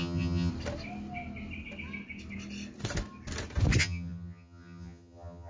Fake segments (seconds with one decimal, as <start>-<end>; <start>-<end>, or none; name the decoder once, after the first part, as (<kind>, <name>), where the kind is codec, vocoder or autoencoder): 0.0-0.5 (vocoder, HiFi-GAN); 3.8-5.5